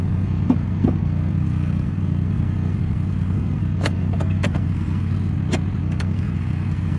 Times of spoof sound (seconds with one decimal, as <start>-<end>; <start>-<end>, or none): 0.0-5.1; 5.8-7.0